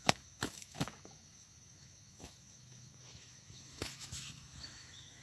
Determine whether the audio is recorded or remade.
remade